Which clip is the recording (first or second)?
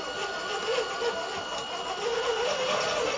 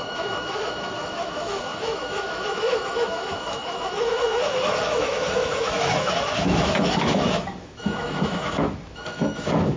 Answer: first